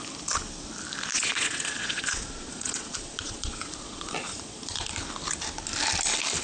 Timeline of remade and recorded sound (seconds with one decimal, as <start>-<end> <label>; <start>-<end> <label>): 0.0-1.1 recorded; 1.1-4.9 remade; 4.9-6.4 recorded